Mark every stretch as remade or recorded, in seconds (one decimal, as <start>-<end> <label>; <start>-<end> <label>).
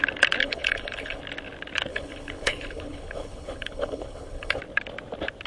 0.0-0.4 recorded; 0.4-1.2 remade; 1.2-1.9 recorded; 1.9-4.6 remade; 4.6-5.5 recorded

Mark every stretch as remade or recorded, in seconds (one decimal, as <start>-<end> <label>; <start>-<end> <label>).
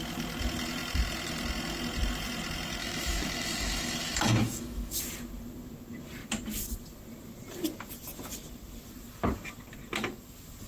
0.0-2.8 recorded; 2.8-5.0 remade; 5.0-10.7 recorded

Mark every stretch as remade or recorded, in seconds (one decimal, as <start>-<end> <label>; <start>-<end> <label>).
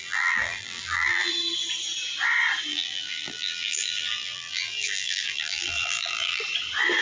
0.0-1.3 remade; 1.3-2.7 recorded; 2.7-6.4 remade; 6.4-7.0 recorded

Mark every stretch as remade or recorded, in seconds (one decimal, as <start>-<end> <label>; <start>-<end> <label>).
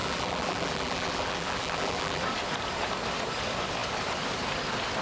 0.0-2.2 remade; 2.2-5.0 recorded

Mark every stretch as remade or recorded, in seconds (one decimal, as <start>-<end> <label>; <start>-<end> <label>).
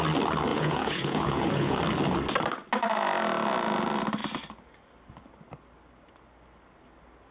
0.0-0.5 recorded; 0.5-1.8 remade; 1.8-7.3 recorded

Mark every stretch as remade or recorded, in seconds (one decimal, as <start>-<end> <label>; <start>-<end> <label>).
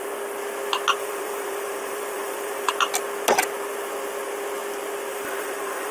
0.0-1.0 recorded; 1.0-2.7 remade; 2.7-5.1 recorded; 5.1-5.9 remade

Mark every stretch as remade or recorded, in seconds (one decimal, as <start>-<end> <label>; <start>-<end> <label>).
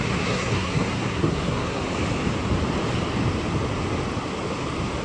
0.0-1.8 remade; 1.8-5.0 recorded